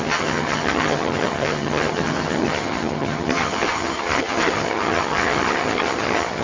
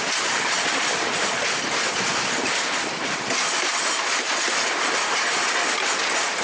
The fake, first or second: first